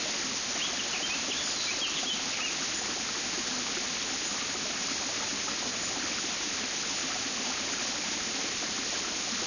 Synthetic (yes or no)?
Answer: no